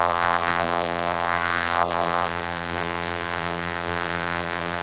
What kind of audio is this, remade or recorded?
remade